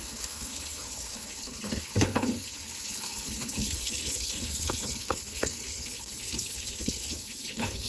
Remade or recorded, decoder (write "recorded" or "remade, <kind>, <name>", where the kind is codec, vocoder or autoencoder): remade, codec, HILCodec